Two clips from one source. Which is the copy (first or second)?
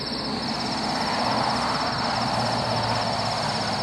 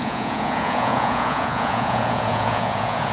second